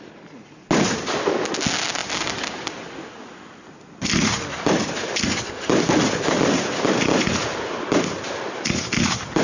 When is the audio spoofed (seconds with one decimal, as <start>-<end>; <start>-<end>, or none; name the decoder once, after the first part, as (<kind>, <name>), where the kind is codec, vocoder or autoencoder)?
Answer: 2.0-7.2 (vocoder, BigVGAN v2)